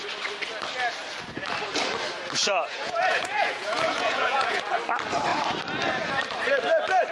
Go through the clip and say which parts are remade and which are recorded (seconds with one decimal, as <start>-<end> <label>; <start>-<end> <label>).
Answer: 0.0-2.4 recorded; 2.4-4.6 remade; 4.6-7.1 recorded